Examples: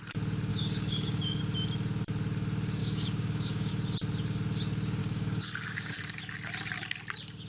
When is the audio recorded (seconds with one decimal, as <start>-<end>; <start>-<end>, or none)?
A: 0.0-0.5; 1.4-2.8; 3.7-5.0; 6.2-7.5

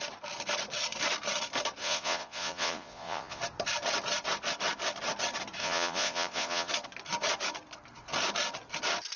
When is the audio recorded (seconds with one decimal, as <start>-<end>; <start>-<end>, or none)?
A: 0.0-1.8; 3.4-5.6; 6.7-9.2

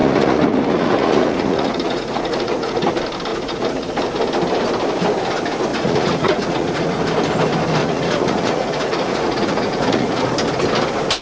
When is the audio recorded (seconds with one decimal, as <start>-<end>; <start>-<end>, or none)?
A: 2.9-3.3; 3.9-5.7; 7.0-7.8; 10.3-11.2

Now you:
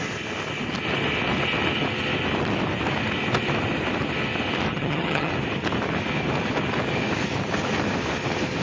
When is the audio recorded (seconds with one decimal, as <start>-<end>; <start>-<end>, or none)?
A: 0.0-4.7; 5.3-8.6